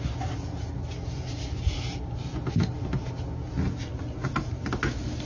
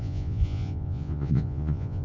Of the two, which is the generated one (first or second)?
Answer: second